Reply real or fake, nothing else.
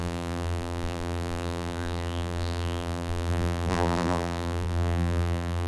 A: fake